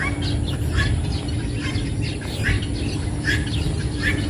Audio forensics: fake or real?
real